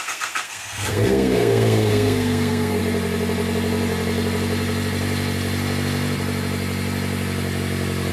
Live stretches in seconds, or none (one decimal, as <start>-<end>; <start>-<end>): 2.8-8.1